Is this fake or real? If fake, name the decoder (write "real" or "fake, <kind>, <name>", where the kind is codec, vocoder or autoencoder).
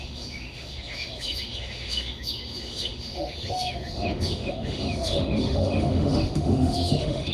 fake, autoencoder, DAC-VAE